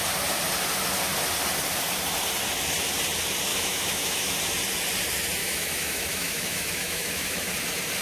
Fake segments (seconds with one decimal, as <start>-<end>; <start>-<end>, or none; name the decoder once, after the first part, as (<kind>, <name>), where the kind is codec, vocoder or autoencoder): 3.5-4.3 (autoencoder, DAC-VAE); 5.4-7.5